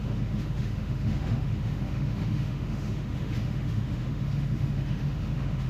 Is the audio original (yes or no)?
no